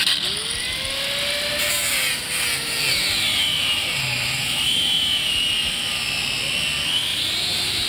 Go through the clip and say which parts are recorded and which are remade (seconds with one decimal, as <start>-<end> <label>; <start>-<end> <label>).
0.0-1.9 recorded; 1.9-5.8 remade; 5.8-7.1 recorded; 7.1-7.9 remade